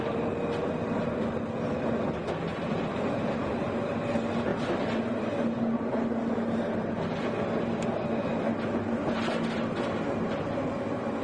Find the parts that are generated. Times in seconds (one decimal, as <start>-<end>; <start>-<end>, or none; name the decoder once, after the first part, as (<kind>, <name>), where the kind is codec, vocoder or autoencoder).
none